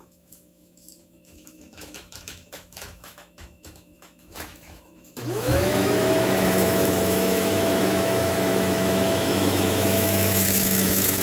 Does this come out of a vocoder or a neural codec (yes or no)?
yes